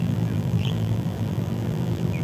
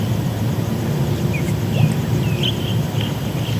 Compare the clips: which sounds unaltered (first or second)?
second